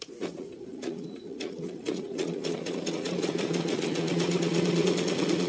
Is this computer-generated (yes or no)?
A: yes